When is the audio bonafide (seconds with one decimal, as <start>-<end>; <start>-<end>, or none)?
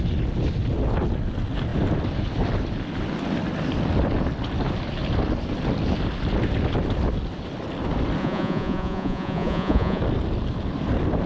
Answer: 0.0-8.2; 10.0-11.3